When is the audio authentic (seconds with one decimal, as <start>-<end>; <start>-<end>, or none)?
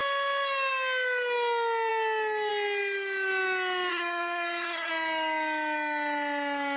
0.0-3.9; 4.9-6.8